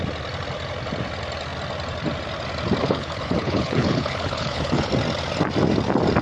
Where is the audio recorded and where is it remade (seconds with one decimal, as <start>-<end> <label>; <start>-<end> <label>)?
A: 0.0-2.8 recorded; 2.8-4.9 remade; 4.9-6.2 recorded